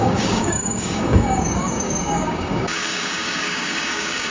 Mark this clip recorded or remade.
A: remade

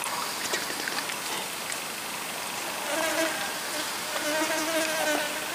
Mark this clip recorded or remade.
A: recorded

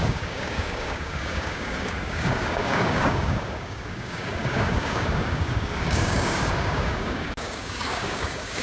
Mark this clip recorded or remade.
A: remade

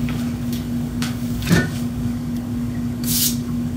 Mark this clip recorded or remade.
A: remade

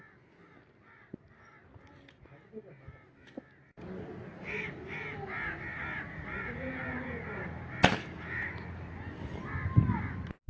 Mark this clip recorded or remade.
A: recorded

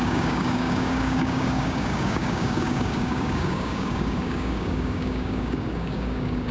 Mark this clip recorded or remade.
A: remade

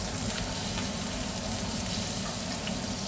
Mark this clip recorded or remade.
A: recorded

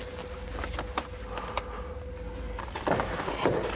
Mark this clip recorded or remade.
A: recorded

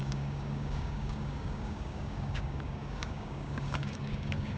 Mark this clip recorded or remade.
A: remade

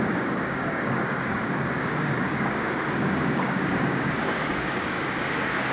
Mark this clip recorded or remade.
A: remade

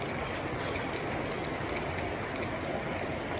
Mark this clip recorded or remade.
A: recorded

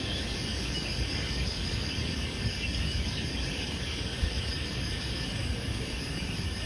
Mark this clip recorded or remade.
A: remade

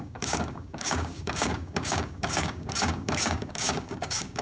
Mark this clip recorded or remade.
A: remade